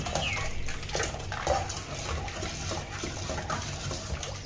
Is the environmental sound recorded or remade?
recorded